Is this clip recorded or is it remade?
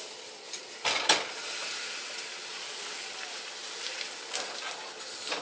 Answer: recorded